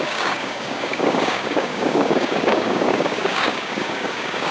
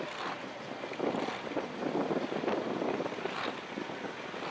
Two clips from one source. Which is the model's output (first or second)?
first